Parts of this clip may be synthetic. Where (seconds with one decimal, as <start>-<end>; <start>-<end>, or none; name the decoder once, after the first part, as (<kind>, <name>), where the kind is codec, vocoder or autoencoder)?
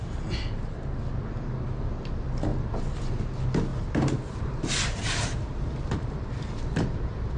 3.7-6.1 (vocoder, BigVGAN v2)